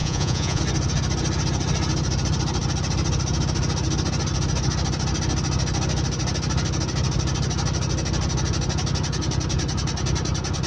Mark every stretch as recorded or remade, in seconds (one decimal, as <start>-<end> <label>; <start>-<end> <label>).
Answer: 0.0-0.6 remade; 0.6-10.7 recorded